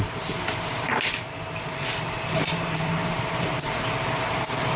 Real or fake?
fake